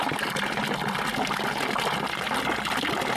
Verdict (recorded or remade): recorded